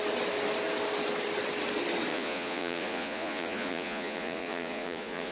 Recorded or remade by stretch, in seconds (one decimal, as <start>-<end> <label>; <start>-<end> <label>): 0.0-2.1 recorded; 2.1-5.3 remade